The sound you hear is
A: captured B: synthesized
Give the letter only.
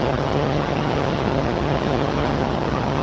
B